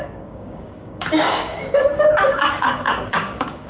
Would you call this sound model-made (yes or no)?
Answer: yes